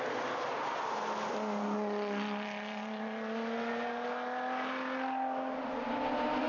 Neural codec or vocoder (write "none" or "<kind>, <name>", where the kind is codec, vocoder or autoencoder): none